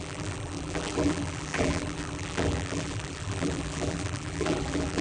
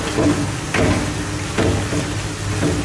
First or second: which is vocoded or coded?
first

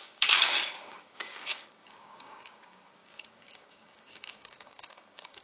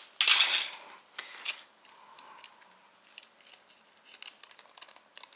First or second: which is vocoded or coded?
first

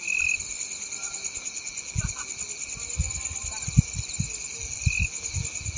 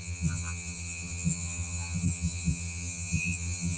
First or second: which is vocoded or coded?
second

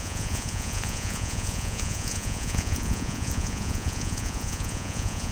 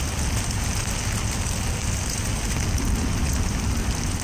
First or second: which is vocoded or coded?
first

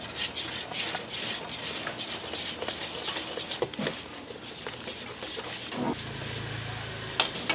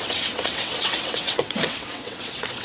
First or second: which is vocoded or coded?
second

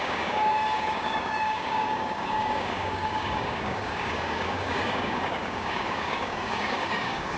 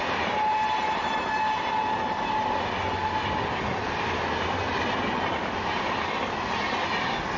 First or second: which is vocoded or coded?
first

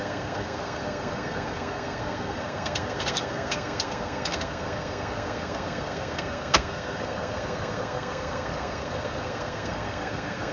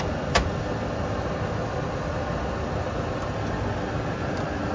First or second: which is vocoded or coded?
first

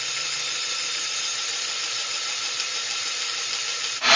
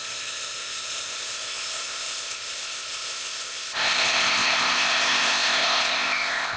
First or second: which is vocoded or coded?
second